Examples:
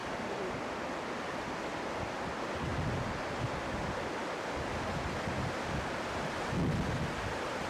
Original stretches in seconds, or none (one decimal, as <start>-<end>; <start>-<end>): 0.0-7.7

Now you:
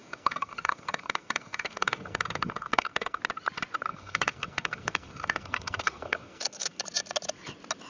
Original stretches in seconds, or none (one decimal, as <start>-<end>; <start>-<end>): 3.2-3.9; 6.8-7.9

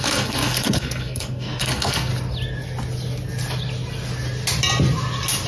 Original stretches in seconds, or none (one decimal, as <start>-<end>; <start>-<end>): 2.1-5.5

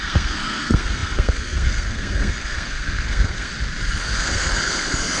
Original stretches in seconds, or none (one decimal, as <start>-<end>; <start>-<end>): 3.5-4.0

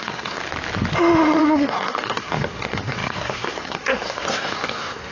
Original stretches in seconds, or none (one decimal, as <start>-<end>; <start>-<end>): 0.4-1.4